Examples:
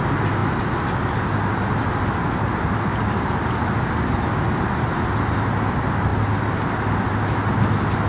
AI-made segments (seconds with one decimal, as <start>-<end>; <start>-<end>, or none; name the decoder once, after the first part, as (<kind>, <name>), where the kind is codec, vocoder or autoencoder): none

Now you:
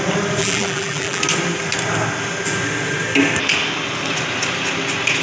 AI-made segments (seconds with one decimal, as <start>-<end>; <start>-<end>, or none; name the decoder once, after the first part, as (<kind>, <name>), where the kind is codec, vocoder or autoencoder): 0.4-1.2 (vocoder, BigVGAN v2)

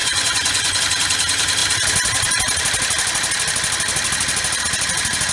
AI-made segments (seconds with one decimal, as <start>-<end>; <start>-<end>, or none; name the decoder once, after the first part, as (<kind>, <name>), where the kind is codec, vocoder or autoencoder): 0.0-0.8 (vocoder, Vocos)

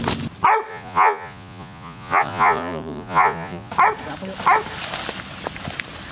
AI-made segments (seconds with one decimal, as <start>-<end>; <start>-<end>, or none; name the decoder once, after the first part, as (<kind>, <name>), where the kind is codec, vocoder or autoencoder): 0.7-3.7 (vocoder, Vocos)

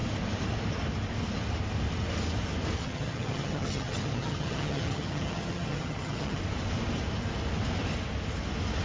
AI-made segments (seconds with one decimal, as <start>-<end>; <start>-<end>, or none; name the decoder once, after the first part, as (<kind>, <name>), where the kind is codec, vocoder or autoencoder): 2.8-6.4 (vocoder, HiFi-GAN)

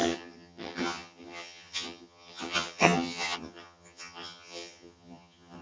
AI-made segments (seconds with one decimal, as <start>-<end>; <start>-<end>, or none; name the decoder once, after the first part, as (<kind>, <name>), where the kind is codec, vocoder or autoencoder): 0.0-5.6 (vocoder, HiFi-GAN)